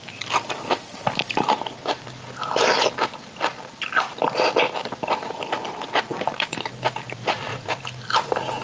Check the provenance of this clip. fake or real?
real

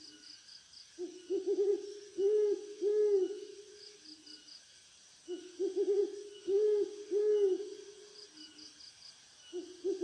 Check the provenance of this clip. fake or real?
real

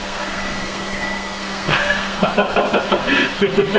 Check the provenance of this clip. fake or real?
fake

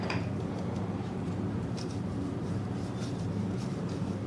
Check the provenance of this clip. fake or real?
fake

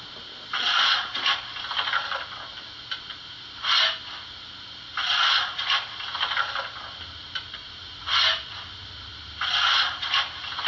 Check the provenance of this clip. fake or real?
real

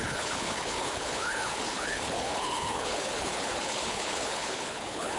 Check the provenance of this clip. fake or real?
fake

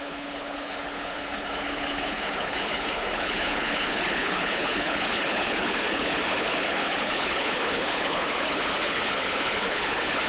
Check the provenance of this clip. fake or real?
fake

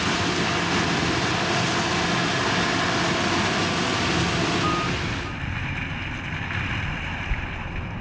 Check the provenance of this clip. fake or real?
real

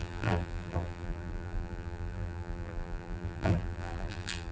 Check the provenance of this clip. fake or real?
fake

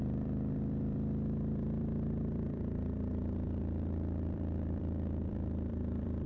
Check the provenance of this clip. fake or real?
fake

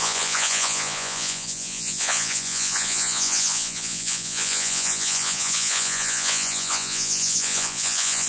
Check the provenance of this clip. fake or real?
fake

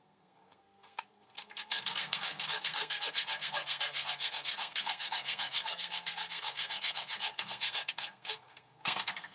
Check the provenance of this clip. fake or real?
fake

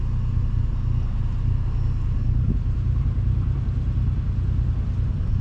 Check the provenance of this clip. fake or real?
real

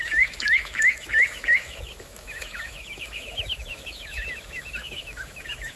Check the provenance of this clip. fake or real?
fake